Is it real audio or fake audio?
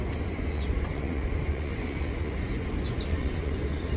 fake